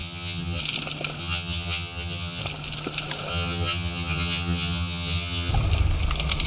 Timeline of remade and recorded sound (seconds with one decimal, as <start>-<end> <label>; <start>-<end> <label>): 0.0-0.6 remade; 0.6-1.2 recorded; 1.2-2.4 remade; 2.4-3.3 recorded; 3.3-5.5 remade; 5.5-6.5 recorded